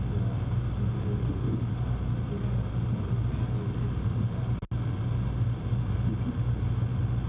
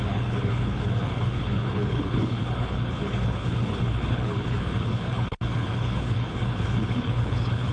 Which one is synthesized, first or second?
second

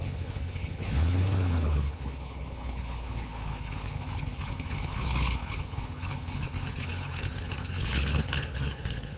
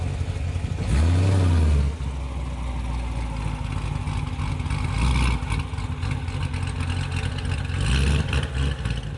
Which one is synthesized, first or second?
first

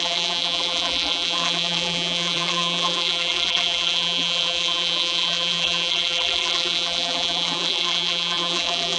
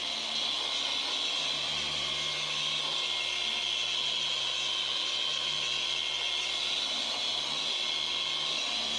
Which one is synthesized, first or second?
first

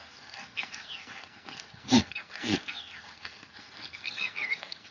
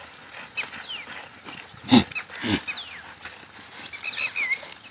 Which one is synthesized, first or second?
first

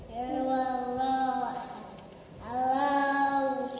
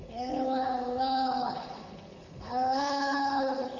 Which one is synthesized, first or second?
second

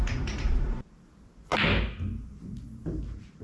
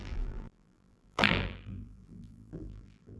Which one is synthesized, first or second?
second